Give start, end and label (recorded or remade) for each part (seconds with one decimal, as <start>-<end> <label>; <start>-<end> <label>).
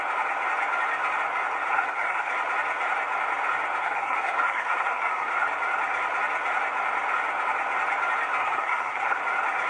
0.0-1.7 recorded; 1.7-2.3 remade; 2.3-3.8 recorded; 3.8-5.3 remade; 5.3-8.4 recorded; 8.4-9.2 remade; 9.2-9.7 recorded